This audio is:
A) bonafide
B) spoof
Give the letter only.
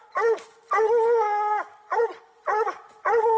A